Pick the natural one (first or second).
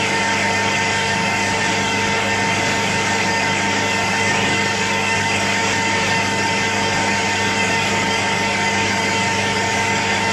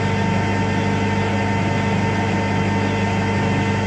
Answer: second